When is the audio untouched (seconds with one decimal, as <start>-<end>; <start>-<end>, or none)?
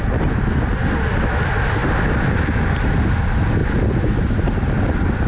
0.0-5.3